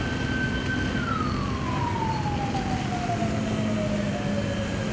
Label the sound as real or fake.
real